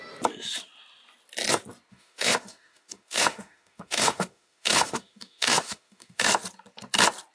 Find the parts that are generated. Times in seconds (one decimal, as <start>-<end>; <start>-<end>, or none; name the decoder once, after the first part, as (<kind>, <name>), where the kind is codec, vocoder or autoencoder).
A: 1.9-6.3 (autoencoder, DAC-VAE)